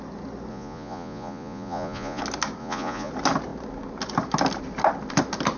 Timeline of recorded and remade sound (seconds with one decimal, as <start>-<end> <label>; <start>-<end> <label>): 0.0-0.5 recorded; 0.5-2.2 remade; 2.2-2.6 recorded; 2.6-3.1 remade; 3.1-5.6 recorded